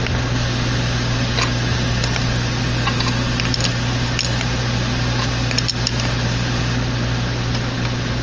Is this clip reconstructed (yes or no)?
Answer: no